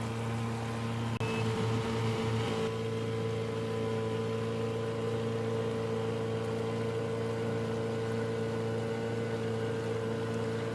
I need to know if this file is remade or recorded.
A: recorded